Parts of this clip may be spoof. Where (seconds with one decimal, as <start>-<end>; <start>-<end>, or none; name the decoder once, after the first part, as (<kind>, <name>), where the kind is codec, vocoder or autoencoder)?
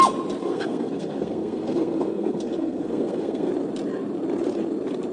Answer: 0.4-3.5 (codec, SNAC)